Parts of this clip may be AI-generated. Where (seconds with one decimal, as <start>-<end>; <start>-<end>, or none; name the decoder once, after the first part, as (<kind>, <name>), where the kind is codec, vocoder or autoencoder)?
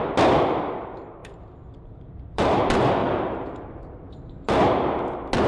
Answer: 1.2-2.6 (vocoder, BigVGAN v2); 3.0-4.6